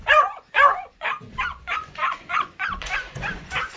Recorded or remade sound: remade